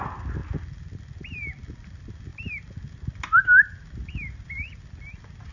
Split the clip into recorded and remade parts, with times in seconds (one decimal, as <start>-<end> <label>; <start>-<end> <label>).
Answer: 0.0-5.5 recorded